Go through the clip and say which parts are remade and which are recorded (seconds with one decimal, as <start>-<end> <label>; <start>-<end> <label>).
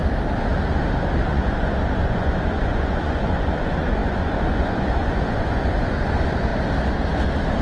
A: 0.0-1.3 recorded; 1.3-6.5 remade; 6.5-7.6 recorded